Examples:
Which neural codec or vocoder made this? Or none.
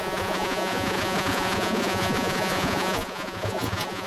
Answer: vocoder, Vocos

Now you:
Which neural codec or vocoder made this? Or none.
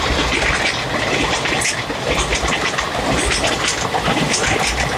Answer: none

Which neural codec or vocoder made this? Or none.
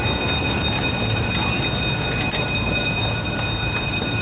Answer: none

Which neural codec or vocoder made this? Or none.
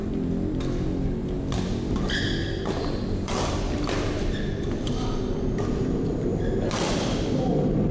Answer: none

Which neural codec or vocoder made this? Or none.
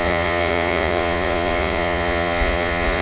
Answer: vocoder, Vocos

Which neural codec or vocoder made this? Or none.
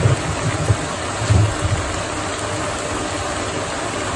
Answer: none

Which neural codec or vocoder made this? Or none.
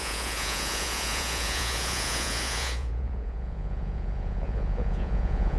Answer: vocoder, Vocos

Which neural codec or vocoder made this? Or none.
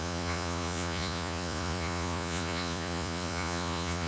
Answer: vocoder, Vocos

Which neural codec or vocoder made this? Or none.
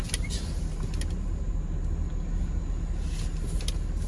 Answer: none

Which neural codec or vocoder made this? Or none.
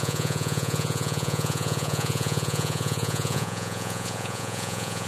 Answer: vocoder, Vocos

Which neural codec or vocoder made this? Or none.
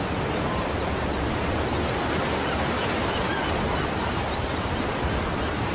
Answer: none